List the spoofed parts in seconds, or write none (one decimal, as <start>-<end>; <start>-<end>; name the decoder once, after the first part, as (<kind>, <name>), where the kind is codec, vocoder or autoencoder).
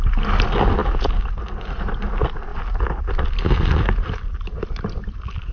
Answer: none